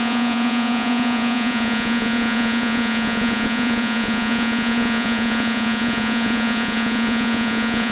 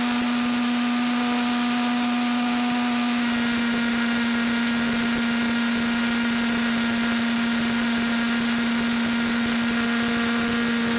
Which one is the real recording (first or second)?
second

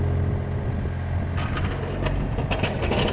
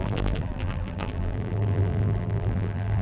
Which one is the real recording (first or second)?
first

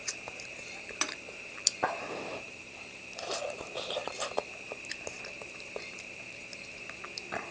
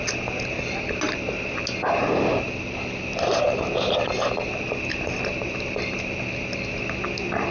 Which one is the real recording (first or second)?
second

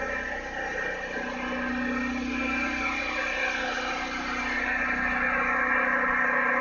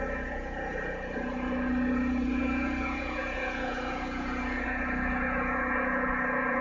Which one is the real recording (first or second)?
first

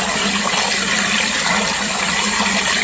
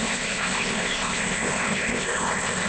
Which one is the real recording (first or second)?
first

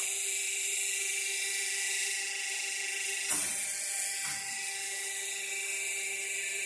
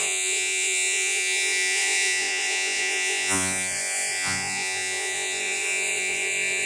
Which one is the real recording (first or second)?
first